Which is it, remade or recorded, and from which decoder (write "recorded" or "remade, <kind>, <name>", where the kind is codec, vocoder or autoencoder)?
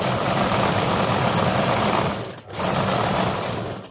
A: recorded